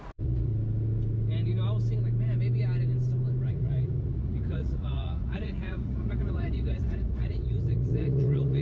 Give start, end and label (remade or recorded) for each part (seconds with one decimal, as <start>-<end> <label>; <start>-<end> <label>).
0.0-0.5 remade; 0.5-3.5 recorded; 3.5-8.6 remade